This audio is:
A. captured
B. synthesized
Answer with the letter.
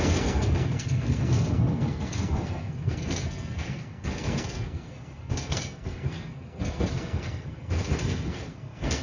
B